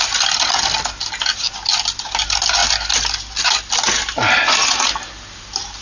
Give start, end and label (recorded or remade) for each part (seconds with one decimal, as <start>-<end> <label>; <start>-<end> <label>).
0.0-5.8 recorded